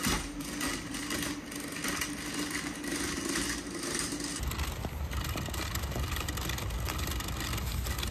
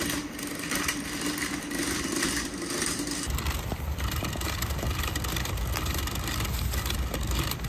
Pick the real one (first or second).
first